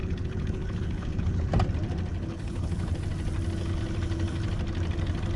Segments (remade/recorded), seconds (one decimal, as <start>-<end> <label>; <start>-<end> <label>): 0.0-1.5 remade; 1.5-2.1 recorded; 2.1-2.9 remade; 2.9-5.4 recorded